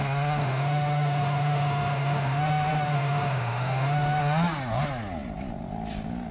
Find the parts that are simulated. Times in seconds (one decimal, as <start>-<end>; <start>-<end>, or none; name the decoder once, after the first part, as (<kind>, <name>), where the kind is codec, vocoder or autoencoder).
0.4-4.2 (autoencoder, DAC-VAE)